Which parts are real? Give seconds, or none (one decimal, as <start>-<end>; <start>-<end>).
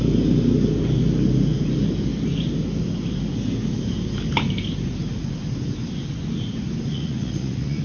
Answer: 0.0-6.9